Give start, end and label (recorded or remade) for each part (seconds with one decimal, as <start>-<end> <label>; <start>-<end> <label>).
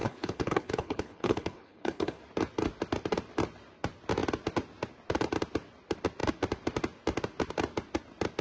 0.0-2.2 remade; 2.2-8.4 recorded